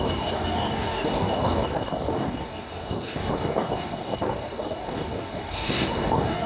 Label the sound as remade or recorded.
remade